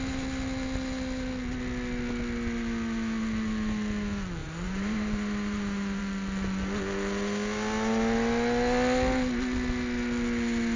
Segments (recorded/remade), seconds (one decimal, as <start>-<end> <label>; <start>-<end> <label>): 0.0-4.4 recorded; 4.4-6.0 remade; 6.0-10.8 recorded